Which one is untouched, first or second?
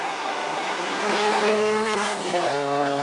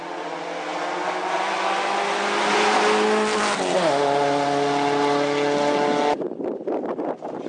second